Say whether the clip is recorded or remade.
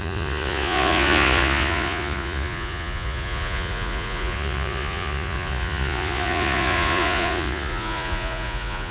remade